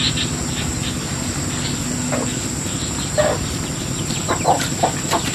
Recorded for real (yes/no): yes